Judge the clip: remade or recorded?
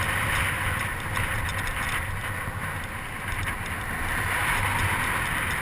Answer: recorded